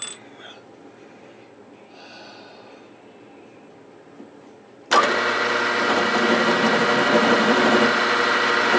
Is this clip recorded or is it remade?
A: recorded